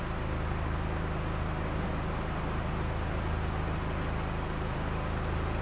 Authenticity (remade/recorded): recorded